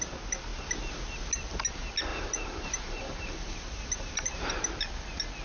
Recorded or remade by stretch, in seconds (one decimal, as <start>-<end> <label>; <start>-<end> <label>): 0.0-2.1 recorded; 2.1-4.5 remade; 4.5-5.4 recorded